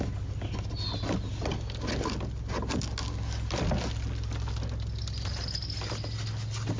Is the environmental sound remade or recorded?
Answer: recorded